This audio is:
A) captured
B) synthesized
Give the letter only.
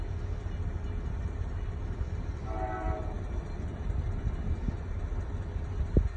A